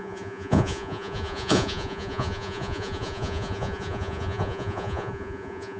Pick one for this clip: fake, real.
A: fake